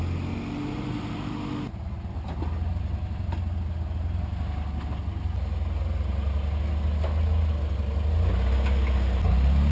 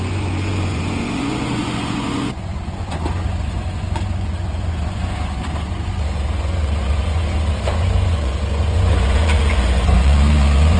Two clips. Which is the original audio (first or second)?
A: first